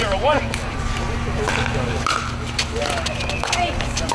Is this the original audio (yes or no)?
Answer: yes